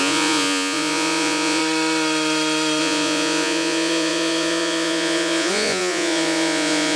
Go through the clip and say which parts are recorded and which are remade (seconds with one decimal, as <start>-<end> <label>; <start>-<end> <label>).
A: 0.0-1.6 remade; 1.6-2.8 recorded; 2.8-7.0 remade

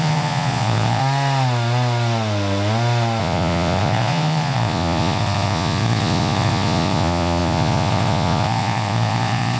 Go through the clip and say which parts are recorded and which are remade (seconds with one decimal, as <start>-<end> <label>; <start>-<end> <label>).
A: 0.0-1.0 remade; 1.0-3.2 recorded; 3.2-9.6 remade